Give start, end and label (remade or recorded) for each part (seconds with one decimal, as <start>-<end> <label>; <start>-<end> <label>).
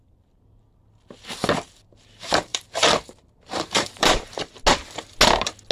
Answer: 0.0-2.5 recorded; 2.5-4.4 remade; 4.4-5.7 recorded